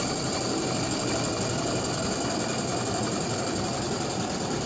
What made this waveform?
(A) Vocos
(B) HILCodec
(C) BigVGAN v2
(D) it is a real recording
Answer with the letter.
C